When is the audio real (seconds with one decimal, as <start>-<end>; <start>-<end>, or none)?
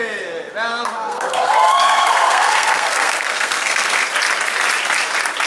0.0-0.7; 4.0-5.5